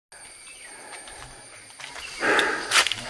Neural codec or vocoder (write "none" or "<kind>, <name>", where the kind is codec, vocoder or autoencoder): none